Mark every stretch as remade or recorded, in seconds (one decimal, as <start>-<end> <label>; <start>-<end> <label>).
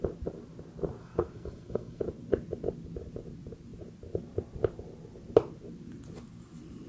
0.0-1.0 recorded; 1.0-2.0 remade; 2.0-6.9 recorded